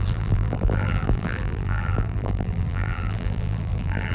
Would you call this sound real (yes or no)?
no